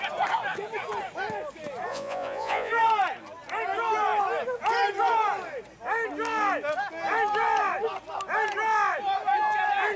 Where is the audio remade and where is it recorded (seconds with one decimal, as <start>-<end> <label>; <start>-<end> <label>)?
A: 0.0-1.9 recorded; 1.9-2.7 remade; 2.7-10.0 recorded